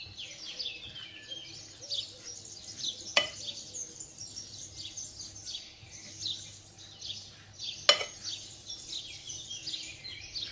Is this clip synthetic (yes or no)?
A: no